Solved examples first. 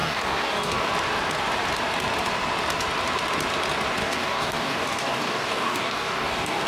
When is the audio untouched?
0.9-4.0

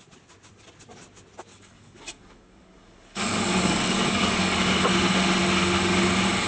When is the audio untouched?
0.0-1.5; 4.6-6.5

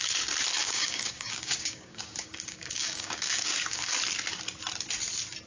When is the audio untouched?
0.0-0.6; 3.9-5.5

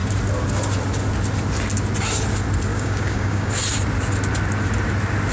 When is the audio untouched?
0.0-2.7; 3.5-5.3

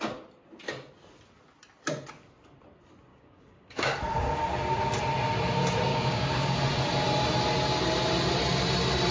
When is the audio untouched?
0.0-3.1; 4.0-5.9; 6.6-9.1